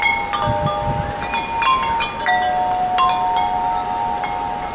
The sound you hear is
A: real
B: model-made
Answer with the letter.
A